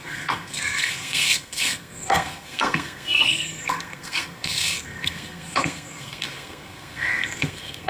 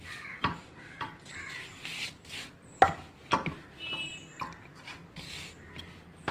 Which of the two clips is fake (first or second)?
first